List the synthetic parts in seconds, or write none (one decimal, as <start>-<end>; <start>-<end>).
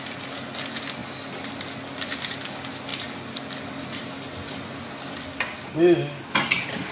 none